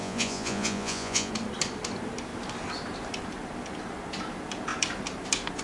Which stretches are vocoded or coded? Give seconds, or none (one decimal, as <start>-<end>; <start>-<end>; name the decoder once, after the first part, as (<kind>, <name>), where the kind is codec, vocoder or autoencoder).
0.0-1.3 (vocoder, Vocos)